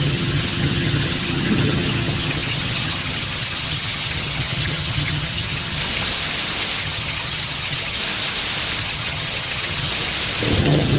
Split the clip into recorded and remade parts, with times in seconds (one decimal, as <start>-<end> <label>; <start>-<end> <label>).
0.0-5.8 remade; 5.8-6.8 recorded; 6.8-8.0 remade; 8.0-8.8 recorded; 8.8-9.9 remade; 9.9-10.6 recorded; 10.6-11.0 remade